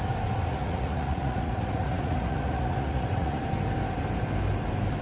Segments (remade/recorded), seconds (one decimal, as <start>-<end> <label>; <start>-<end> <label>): 0.0-0.4 recorded; 0.4-3.4 remade; 3.4-5.0 recorded